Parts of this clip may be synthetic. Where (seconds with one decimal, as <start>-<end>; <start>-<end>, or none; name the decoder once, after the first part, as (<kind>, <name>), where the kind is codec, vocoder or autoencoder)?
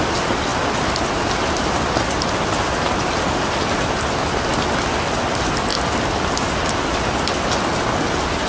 none